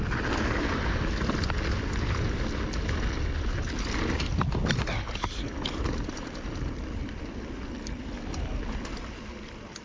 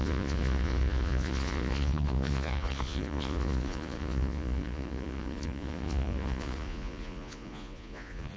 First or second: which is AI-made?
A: second